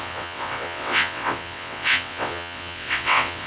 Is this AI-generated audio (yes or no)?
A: yes